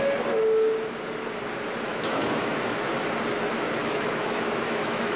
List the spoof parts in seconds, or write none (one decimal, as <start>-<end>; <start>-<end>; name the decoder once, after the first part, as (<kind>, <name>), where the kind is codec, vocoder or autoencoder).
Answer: 1.9-2.9 (autoencoder, DAC-VAE); 3.8-5.2